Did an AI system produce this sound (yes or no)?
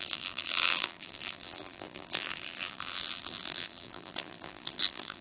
yes